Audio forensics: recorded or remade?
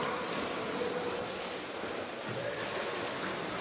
recorded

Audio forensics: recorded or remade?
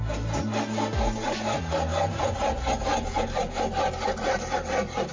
recorded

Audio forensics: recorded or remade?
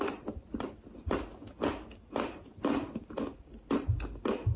recorded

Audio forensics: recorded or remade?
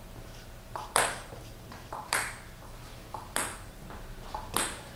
remade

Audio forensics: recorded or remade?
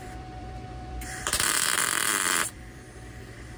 remade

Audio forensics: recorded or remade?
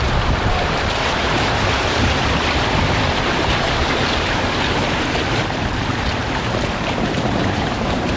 remade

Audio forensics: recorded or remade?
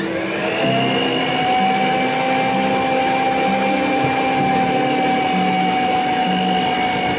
recorded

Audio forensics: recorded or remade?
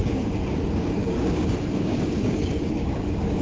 remade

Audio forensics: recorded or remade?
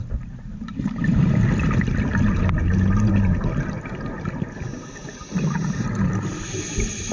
recorded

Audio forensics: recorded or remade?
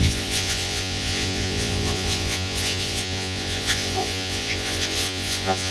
remade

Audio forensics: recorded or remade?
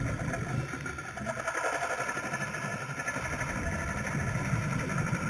recorded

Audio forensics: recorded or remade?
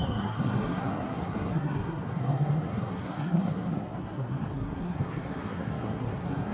remade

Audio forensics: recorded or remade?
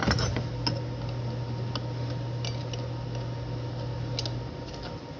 recorded